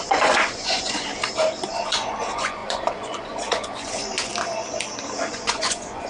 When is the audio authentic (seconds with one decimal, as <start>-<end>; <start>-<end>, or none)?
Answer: 1.2-1.7; 4.3-5.3